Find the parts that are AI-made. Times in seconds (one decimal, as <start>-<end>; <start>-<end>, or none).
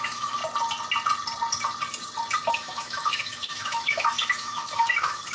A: 0.0-0.4; 2.5-5.3